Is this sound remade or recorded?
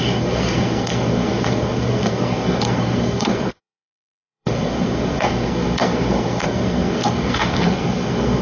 remade